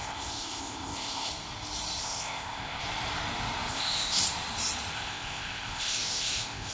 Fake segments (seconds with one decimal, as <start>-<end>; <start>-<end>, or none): 0.0-1.3; 2.0-2.8; 3.7-4.2; 4.9-6.7